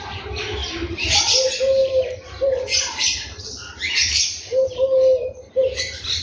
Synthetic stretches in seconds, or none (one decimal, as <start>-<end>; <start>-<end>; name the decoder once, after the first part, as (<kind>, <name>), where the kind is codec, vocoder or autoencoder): 0.6-1.2 (vocoder, BigVGAN v2); 1.8-5.5